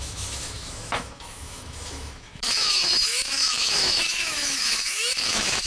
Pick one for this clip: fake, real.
fake